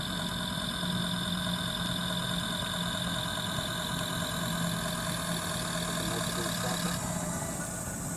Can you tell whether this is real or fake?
real